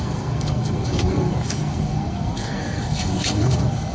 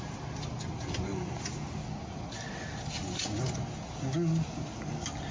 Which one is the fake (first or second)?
first